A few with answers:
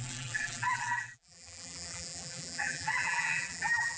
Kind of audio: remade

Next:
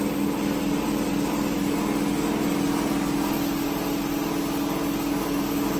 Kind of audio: recorded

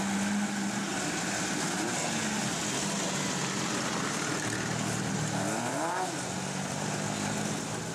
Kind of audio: recorded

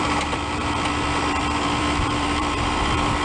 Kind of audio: remade